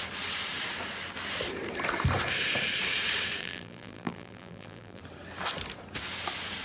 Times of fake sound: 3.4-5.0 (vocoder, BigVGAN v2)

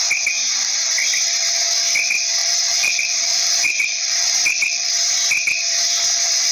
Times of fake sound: 2.4-4.9 (vocoder, BigVGAN v2)

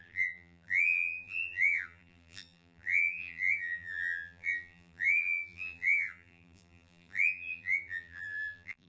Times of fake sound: 0.0-8.9 (vocoder, BigVGAN v2)

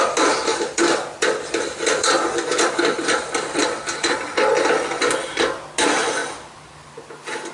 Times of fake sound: 0.5-2.8 (vocoder, BigVGAN v2); 3.6-5.0

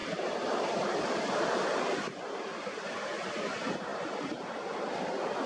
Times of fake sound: 0.0-3.3 (vocoder, BigVGAN v2)

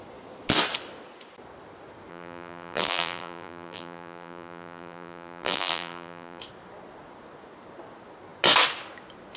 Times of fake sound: 2.1-6.4 (vocoder, BigVGAN v2)